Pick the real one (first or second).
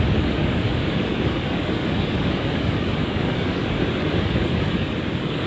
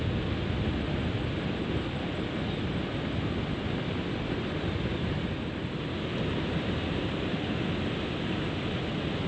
second